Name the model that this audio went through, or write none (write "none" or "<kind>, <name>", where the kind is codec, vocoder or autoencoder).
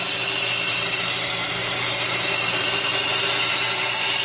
none